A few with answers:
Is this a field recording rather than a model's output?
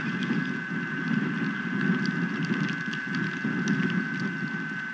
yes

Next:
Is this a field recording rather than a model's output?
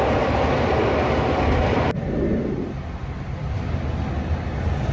yes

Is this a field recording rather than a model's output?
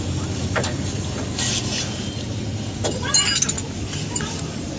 yes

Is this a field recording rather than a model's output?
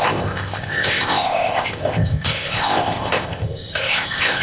no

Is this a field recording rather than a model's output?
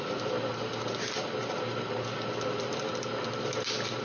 yes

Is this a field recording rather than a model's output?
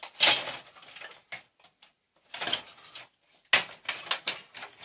yes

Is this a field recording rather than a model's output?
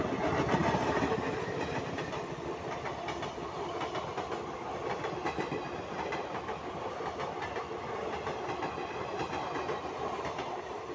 yes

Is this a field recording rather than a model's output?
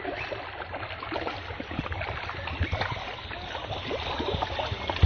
yes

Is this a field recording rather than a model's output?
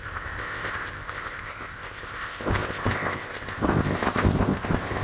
no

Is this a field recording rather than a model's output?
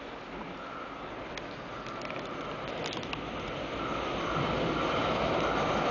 yes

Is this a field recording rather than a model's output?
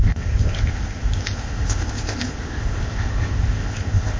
no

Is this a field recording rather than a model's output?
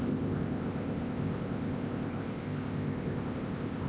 no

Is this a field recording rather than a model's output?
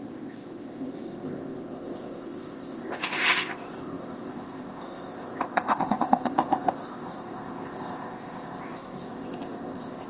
no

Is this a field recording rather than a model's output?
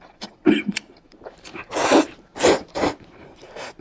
yes